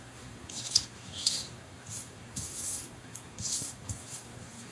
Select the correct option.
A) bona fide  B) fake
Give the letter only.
B